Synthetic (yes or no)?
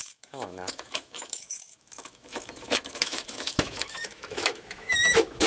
yes